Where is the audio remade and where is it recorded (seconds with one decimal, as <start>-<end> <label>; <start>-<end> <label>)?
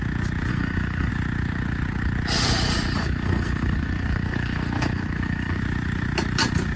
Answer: 0.0-0.5 recorded; 0.5-1.1 remade; 1.1-3.0 recorded; 3.0-5.6 remade; 5.6-6.8 recorded